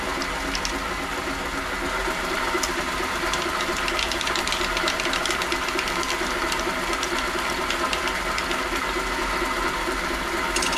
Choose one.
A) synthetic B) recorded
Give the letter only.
B